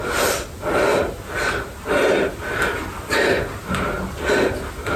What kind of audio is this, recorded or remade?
recorded